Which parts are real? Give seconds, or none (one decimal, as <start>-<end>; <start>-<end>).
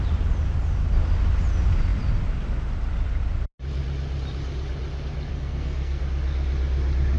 0.0-5.3; 6.0-7.2